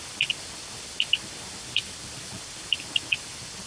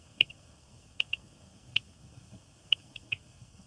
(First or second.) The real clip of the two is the first